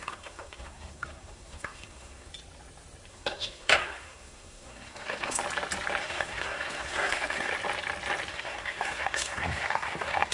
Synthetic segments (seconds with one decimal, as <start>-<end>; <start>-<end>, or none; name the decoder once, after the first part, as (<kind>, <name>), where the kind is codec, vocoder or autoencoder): 0.0-2.3 (codec, SNAC); 3.1-5.4; 6.0-7.5; 8.3-10.3